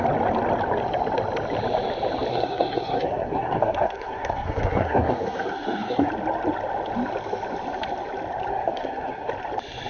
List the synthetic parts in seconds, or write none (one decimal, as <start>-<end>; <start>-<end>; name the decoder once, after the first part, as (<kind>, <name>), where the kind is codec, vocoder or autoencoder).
2.3-6.1 (codec, SNAC); 8.5-9.3